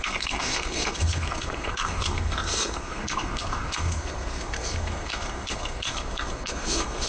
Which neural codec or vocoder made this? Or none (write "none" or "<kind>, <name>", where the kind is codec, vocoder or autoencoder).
codec, SNAC